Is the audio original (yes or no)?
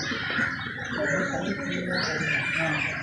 yes